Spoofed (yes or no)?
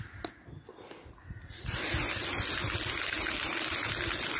no